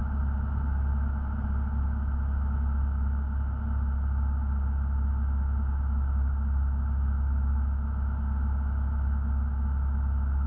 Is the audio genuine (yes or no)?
yes